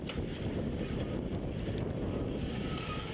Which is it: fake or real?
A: real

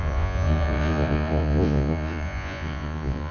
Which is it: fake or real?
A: fake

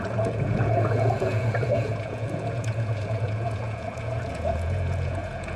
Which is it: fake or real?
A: fake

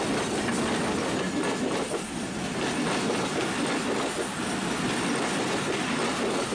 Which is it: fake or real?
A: real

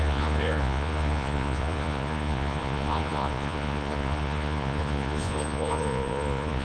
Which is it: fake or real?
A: fake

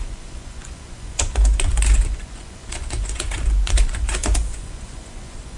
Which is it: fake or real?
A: fake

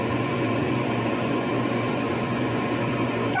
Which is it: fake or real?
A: fake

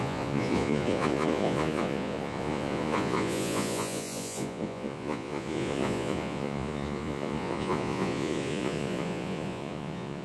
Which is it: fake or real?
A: fake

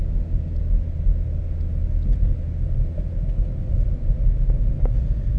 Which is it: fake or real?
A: real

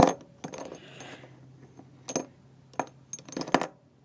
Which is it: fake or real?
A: real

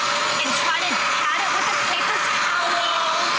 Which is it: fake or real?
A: fake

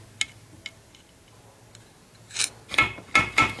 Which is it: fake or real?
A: real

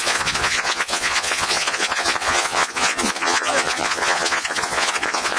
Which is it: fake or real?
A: fake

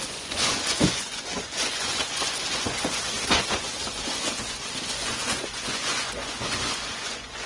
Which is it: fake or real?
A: fake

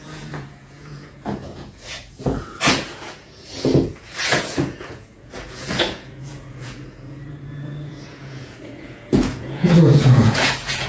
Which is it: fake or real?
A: fake